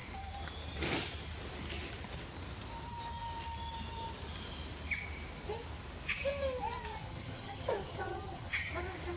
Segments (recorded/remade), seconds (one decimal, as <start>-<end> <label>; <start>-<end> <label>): 0.0-7.0 recorded; 7.0-8.7 remade; 8.7-9.2 recorded